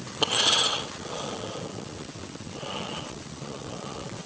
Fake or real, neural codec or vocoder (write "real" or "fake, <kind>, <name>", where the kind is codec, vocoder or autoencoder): fake, vocoder, WaveNeXt